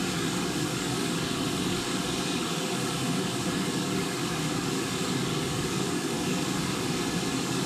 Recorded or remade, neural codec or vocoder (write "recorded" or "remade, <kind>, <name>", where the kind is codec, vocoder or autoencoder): remade, codec, DAC